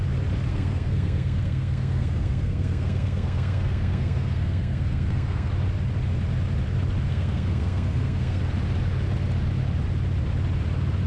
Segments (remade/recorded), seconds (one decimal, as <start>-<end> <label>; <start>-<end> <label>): 0.0-0.5 recorded; 0.5-5.5 remade; 5.5-7.1 recorded; 7.1-8.4 remade; 8.4-11.1 recorded